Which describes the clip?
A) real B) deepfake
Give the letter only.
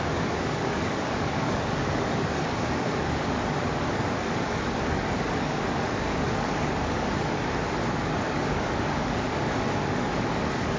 B